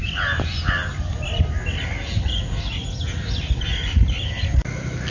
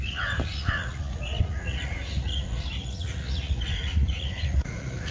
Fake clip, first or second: second